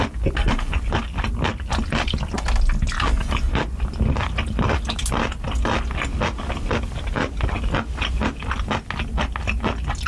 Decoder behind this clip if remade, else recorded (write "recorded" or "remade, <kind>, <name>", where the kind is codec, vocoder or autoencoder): recorded